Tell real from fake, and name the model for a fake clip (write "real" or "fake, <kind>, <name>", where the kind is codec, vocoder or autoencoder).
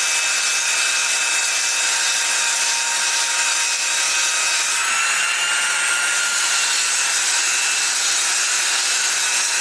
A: real